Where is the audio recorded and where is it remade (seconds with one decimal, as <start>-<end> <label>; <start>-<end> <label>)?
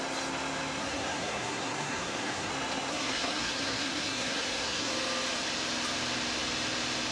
0.0-0.8 recorded; 0.8-2.5 remade; 2.5-2.9 recorded; 2.9-4.9 remade; 4.9-7.1 recorded